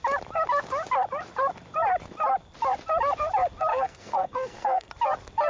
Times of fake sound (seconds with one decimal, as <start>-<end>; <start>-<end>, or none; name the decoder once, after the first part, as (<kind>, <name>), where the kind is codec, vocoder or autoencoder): 3.7-4.9 (codec, SNAC)